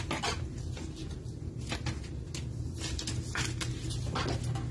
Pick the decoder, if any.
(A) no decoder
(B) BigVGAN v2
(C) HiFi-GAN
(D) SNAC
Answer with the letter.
A